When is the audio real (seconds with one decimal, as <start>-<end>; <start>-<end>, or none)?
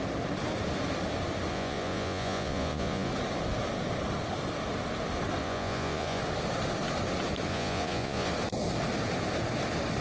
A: 0.0-1.5; 3.1-5.4; 6.2-7.5; 8.3-10.0